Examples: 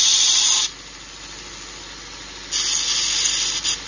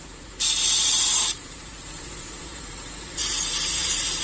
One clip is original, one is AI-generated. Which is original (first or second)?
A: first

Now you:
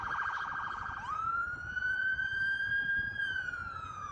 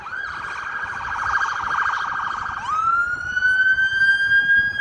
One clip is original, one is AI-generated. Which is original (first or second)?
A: second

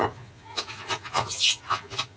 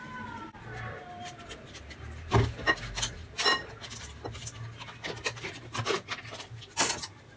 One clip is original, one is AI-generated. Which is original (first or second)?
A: second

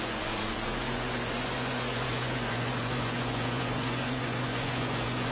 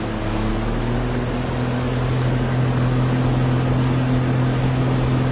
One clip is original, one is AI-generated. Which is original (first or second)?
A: second